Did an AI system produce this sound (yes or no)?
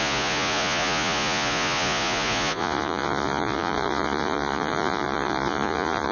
yes